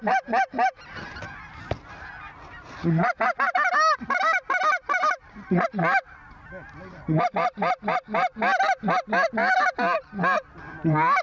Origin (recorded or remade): recorded